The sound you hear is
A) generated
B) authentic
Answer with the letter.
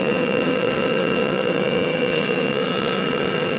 A